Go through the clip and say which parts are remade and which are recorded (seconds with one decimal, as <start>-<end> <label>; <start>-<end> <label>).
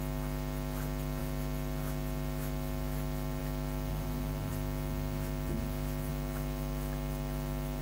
0.0-3.9 recorded; 3.9-4.5 remade; 4.5-7.8 recorded